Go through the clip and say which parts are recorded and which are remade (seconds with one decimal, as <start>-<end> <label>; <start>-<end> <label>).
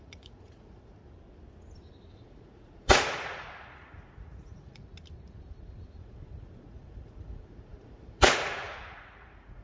0.0-1.0 remade; 1.0-2.1 recorded; 2.1-4.9 remade; 4.9-6.0 recorded; 6.0-9.6 remade